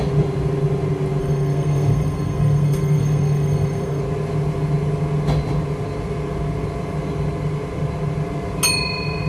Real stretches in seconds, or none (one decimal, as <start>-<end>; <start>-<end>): 0.0-1.2; 4.0-9.3